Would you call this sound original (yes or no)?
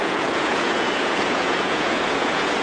no